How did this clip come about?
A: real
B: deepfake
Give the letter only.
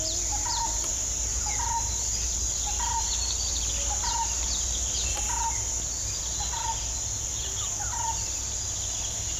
A